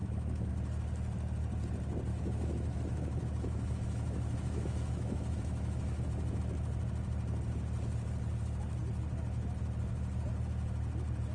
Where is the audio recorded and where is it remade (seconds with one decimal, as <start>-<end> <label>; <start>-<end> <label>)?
0.0-0.5 remade; 0.5-2.1 recorded; 2.1-6.4 remade; 6.4-11.3 recorded